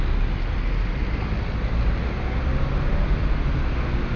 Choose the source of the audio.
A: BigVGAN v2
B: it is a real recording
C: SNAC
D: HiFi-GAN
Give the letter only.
B